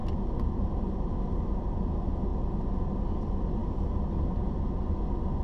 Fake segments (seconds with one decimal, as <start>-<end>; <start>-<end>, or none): none